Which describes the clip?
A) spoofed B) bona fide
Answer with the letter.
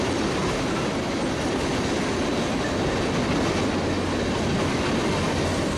B